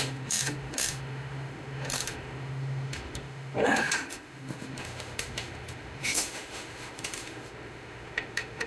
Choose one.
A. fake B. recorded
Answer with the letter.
A